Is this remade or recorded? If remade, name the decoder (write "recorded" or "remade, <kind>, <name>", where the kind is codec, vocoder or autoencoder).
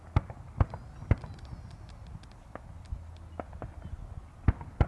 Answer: recorded